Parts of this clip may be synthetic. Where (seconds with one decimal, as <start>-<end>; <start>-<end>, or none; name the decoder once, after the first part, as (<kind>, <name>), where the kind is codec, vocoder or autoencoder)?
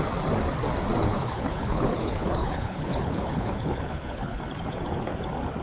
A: 1.0-4.4 (codec, HILCodec)